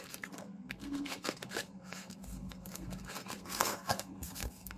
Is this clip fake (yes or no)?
yes